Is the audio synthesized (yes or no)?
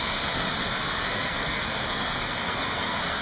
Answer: yes